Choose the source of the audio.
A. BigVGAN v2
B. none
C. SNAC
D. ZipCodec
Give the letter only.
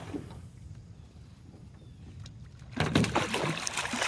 B